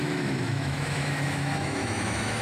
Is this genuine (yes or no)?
no